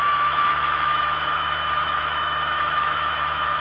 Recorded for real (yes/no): no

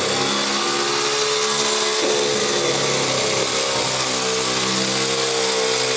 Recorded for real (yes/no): yes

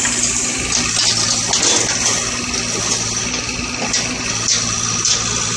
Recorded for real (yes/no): yes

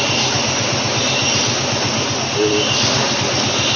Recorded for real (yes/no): yes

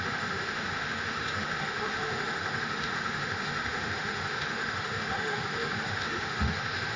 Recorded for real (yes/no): no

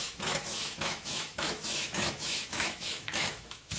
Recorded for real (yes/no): no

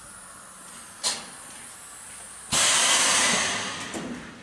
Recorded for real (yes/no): yes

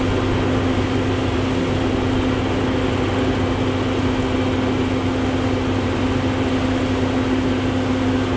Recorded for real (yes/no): yes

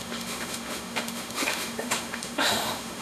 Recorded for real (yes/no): no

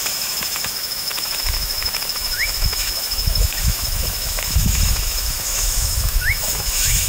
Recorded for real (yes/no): no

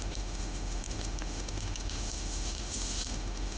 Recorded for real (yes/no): no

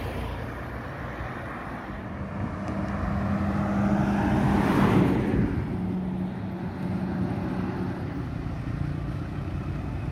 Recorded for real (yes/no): yes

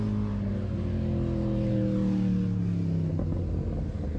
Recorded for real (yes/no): yes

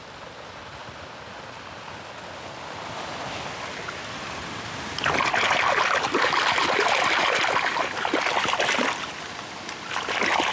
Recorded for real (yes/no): yes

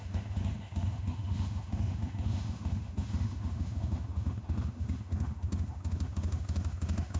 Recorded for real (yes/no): no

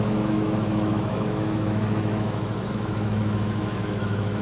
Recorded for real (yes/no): no